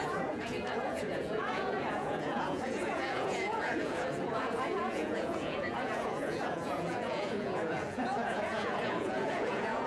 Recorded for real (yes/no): no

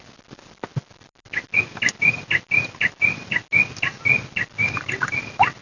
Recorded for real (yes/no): yes